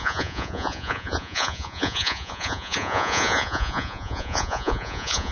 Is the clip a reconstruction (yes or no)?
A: yes